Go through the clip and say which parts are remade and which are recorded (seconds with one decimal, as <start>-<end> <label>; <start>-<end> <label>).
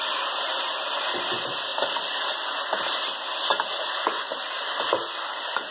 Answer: 0.0-5.7 recorded